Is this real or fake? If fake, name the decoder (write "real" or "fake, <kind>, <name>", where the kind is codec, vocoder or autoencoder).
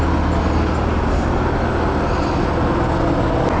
real